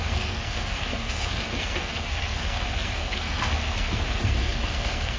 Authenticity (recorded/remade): remade